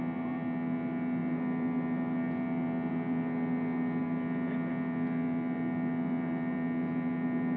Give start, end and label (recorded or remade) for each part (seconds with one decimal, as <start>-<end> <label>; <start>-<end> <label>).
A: 0.0-7.6 recorded